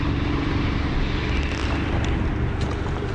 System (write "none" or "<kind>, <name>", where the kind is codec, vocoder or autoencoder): none